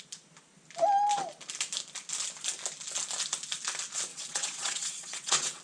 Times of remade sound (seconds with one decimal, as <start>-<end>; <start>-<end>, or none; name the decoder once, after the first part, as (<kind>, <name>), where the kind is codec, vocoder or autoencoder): 4.1-5.6 (vocoder, WaveNeXt)